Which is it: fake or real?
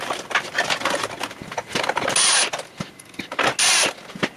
real